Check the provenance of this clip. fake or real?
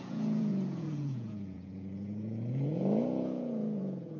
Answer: fake